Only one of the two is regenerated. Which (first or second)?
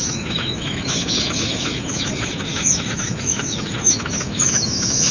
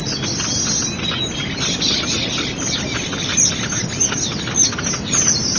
first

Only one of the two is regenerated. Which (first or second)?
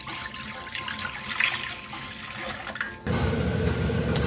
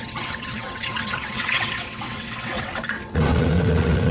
second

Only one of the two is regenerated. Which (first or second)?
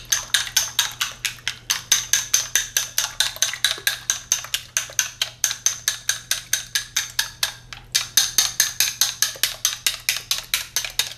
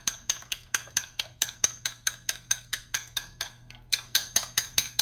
second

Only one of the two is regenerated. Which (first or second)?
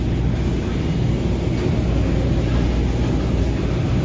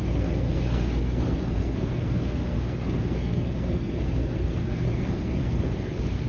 second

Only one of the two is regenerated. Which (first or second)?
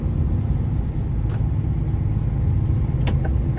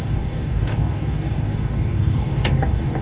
second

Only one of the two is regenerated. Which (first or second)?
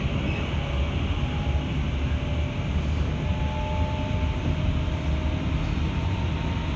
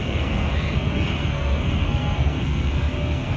second